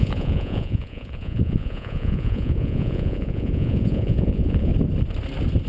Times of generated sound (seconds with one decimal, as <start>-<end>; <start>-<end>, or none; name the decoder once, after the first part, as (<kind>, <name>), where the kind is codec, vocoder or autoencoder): 0.0-4.7 (vocoder, Vocos)